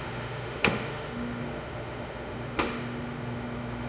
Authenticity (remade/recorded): remade